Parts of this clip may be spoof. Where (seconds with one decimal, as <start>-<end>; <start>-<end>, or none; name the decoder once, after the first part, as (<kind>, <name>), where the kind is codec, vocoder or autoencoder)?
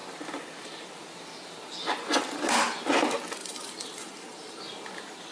3.4-4.6 (vocoder, BigVGAN v2)